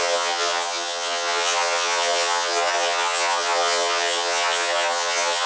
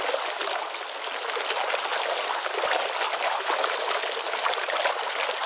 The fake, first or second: first